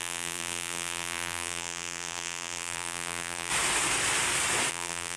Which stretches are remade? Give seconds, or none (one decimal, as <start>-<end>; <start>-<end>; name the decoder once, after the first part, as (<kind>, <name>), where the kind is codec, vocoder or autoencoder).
0.0-3.5 (vocoder, BigVGAN v2); 4.7-5.2